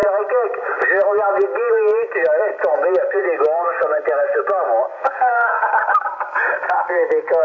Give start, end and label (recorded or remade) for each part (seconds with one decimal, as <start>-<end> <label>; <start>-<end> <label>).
0.0-4.9 recorded; 4.9-5.7 remade; 5.7-7.4 recorded